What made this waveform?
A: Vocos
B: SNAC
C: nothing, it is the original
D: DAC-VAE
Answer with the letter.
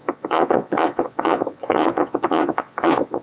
A